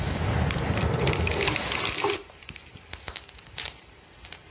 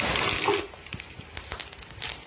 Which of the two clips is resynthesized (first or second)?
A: first